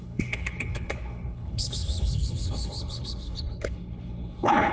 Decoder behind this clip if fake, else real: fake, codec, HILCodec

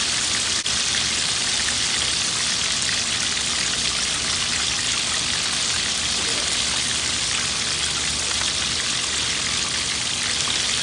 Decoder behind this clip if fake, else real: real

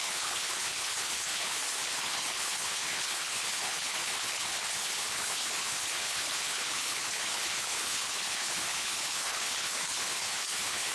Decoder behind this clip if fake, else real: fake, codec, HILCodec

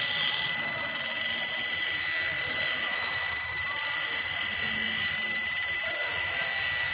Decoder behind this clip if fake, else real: real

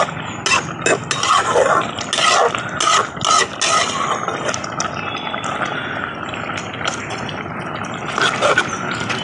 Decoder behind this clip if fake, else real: real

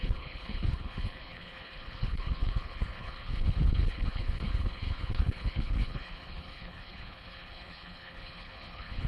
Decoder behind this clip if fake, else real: fake, codec, HILCodec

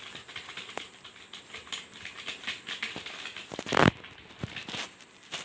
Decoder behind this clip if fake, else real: real